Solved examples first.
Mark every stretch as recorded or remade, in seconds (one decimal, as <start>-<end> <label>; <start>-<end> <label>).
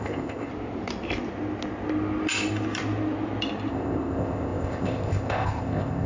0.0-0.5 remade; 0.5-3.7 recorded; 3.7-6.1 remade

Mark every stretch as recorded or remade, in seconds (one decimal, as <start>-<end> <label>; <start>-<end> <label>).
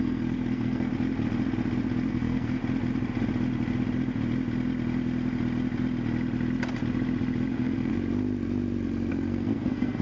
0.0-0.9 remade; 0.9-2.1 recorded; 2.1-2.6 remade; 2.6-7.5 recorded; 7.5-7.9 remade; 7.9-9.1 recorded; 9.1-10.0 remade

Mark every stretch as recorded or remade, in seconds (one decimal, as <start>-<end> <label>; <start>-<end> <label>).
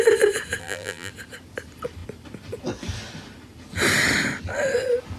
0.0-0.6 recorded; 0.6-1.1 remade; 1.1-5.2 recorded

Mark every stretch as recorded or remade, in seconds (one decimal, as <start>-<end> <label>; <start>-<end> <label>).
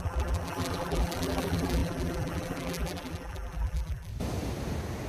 0.0-4.1 remade; 4.1-5.1 recorded